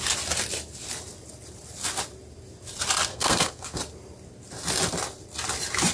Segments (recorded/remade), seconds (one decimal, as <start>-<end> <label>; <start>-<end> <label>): 0.0-3.1 recorded; 3.1-3.8 remade; 3.8-5.9 recorded

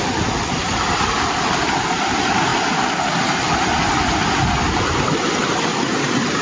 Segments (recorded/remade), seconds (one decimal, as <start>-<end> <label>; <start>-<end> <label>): 0.0-6.4 recorded

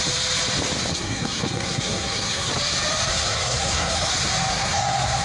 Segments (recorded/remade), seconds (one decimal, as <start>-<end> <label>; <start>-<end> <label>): 0.0-0.9 recorded; 0.9-2.5 remade; 2.5-3.1 recorded; 3.1-4.1 remade; 4.1-4.5 recorded; 4.5-5.2 remade

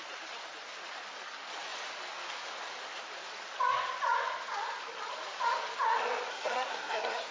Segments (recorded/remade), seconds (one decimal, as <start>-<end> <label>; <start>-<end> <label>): 0.0-6.3 recorded; 6.3-7.3 remade